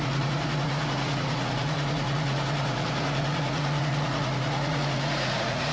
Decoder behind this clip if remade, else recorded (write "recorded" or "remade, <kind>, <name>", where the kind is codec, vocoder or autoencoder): remade, vocoder, Vocos